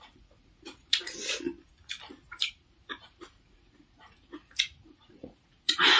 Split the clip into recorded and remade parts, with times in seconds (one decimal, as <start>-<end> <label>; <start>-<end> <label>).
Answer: 0.0-1.0 remade; 1.0-2.3 recorded; 2.3-6.0 remade